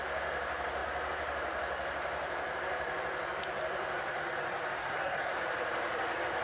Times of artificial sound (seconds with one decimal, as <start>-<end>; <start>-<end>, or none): 4.8-5.4